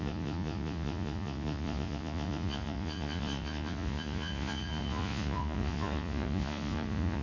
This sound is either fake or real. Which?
fake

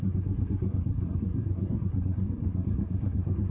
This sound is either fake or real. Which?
fake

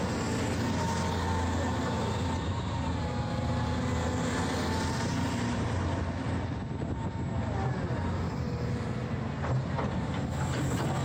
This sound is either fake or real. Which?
real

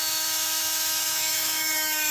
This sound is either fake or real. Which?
fake